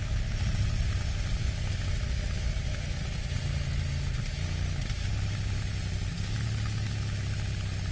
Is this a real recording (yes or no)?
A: yes